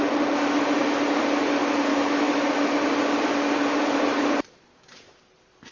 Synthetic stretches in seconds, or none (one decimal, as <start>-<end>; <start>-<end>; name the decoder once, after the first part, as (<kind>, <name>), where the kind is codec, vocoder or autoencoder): 1.9-2.8 (autoencoder, DAC-VAE)